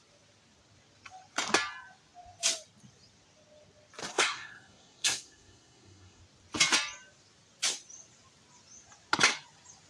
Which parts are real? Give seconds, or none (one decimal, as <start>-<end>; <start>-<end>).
0.0-4.0; 6.2-9.9